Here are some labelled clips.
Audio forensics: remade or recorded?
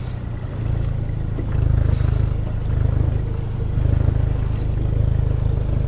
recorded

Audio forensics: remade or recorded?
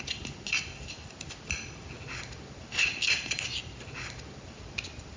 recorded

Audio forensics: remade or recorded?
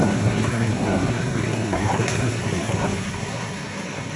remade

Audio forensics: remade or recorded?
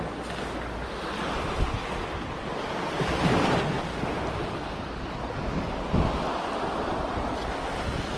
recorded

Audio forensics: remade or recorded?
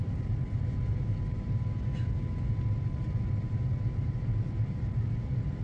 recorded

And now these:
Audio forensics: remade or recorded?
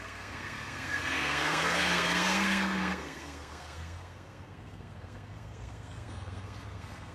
remade